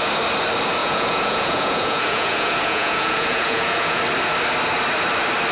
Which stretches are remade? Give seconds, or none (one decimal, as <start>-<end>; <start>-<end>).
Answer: 0.8-4.0